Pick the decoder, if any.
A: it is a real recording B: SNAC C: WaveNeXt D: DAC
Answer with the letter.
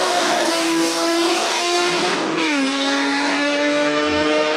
D